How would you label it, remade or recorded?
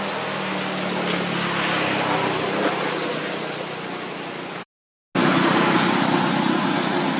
recorded